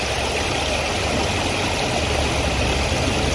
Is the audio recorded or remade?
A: recorded